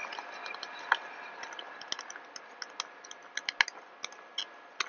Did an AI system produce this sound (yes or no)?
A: no